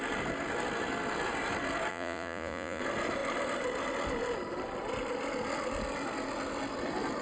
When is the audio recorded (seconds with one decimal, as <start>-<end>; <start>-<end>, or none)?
0.0-1.9; 2.8-7.2